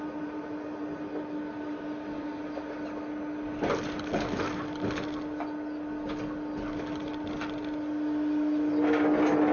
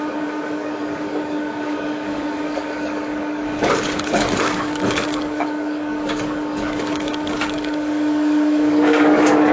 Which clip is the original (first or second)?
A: first